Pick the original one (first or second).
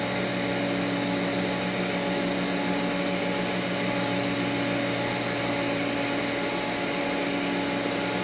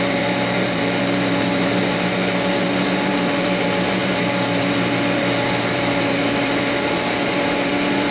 first